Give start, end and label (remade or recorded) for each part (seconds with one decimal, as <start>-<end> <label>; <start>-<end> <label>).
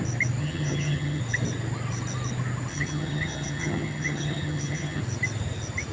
0.0-0.4 recorded; 0.4-1.2 remade; 1.2-2.7 recorded; 2.7-5.0 remade; 5.0-5.9 recorded